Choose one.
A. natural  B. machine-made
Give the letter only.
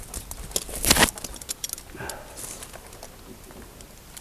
A